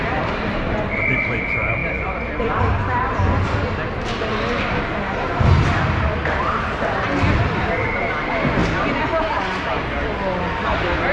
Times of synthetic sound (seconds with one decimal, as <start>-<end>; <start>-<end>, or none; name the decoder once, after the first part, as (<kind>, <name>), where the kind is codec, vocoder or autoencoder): 1.8-3.0 (vocoder, BigVGAN v2); 6.2-6.9